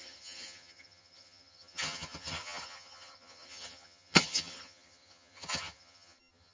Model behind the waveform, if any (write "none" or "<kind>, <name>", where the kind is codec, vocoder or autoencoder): vocoder, HiFi-GAN